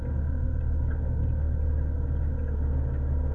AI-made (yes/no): no